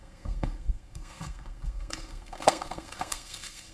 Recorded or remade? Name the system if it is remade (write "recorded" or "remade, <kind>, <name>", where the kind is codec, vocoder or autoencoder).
remade, codec, SNAC